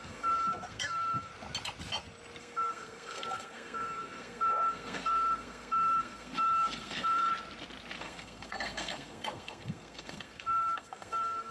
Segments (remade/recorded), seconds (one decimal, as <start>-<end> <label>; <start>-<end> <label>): 0.0-1.3 remade; 1.3-2.4 recorded; 2.4-7.3 remade; 7.3-8.0 recorded; 8.0-11.5 remade